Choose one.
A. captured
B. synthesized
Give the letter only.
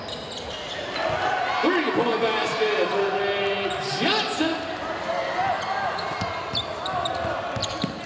A